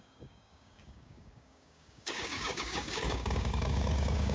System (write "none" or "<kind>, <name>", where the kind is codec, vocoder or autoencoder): codec, DAC